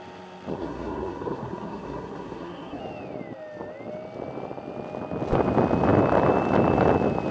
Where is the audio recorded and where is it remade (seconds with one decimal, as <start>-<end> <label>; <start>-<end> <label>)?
0.0-0.5 recorded; 0.5-2.8 remade; 2.8-7.3 recorded

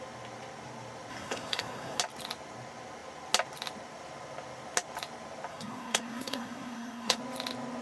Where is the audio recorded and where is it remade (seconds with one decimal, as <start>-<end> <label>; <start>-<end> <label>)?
0.0-1.1 recorded; 1.1-2.0 remade; 2.0-5.5 recorded; 5.5-7.2 remade; 7.2-7.8 recorded

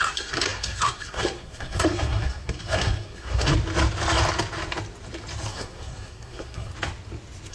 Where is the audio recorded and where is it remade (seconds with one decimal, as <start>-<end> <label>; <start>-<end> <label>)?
0.0-3.5 remade; 3.5-5.5 recorded; 5.5-6.7 remade; 6.7-7.5 recorded

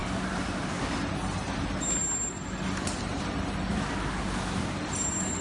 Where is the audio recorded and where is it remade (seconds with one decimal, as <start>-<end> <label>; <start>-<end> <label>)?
0.0-5.4 recorded

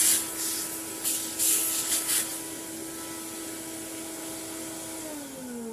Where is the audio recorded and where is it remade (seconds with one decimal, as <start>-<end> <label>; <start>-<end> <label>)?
0.0-5.7 recorded

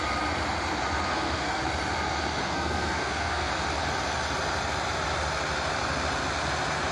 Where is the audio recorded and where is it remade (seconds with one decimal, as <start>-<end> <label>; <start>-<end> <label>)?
0.0-1.1 recorded; 1.1-1.6 remade; 1.6-2.4 recorded; 2.4-3.5 remade; 3.5-6.9 recorded

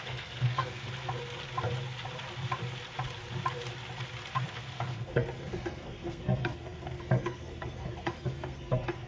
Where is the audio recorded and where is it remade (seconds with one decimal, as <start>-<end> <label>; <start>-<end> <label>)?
0.0-0.9 remade; 0.9-4.3 recorded; 4.3-9.1 remade